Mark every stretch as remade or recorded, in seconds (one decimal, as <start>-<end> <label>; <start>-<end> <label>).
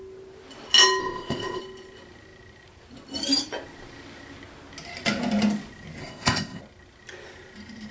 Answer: 0.0-1.0 recorded; 1.0-1.6 remade; 1.6-6.0 recorded; 6.0-6.6 remade; 6.6-7.9 recorded